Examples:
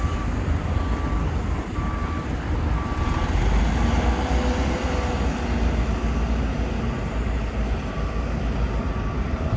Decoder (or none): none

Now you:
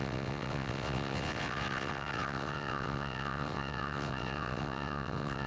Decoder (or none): vocoder, WaveNeXt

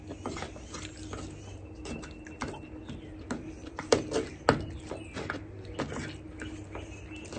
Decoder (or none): none